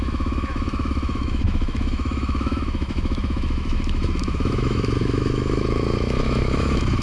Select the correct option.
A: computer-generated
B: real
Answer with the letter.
A